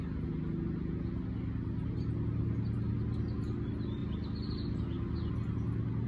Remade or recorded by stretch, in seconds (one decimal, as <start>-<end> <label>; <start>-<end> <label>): 0.0-6.1 recorded